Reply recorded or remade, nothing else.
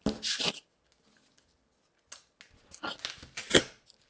recorded